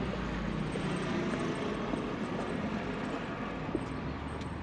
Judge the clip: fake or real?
real